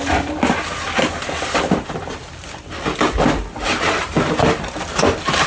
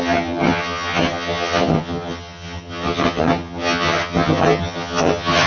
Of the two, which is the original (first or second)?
first